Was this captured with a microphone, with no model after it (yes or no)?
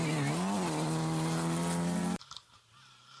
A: yes